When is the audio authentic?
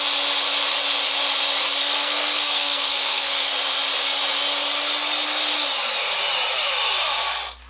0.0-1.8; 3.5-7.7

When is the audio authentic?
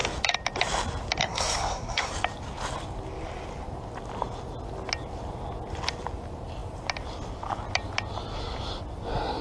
0.0-1.2; 2.1-9.4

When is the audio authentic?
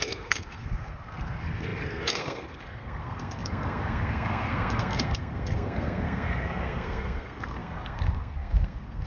none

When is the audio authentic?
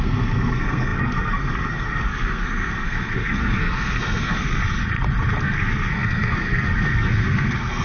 4.6-5.4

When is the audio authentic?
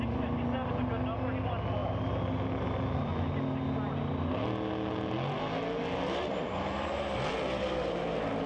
0.0-8.5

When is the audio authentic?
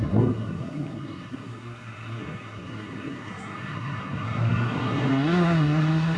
none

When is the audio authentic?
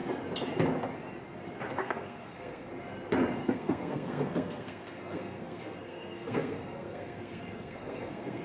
0.0-1.8; 2.7-3.4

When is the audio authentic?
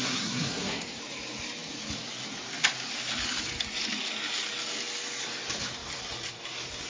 1.0-6.9